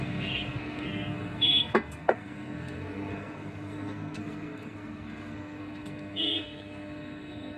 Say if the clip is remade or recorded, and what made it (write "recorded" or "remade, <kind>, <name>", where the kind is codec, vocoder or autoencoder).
remade, codec, SNAC